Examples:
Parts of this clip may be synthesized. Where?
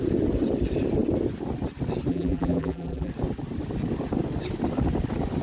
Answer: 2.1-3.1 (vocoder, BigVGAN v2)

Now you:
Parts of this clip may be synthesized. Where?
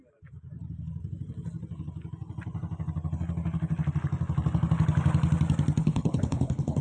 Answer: 5.8-6.8 (codec, HILCodec)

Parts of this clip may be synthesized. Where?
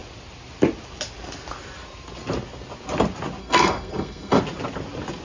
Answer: 3.4-4.4 (codec, SNAC)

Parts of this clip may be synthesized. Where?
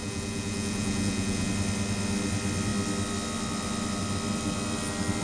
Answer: 0.0-1.5 (vocoder, Vocos)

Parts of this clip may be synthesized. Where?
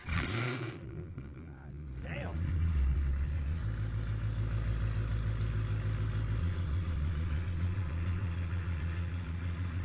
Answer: 0.0-3.6 (vocoder, Vocos); 6.4-9.8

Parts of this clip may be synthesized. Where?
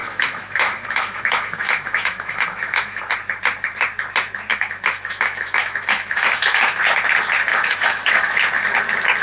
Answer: 0.0-3.0 (autoencoder, DAC-VAE); 4.5-6.8; 7.5-8.3